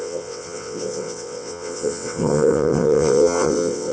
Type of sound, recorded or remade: remade